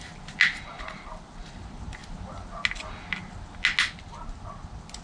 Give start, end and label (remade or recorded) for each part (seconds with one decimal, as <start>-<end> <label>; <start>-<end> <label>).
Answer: 0.0-5.0 recorded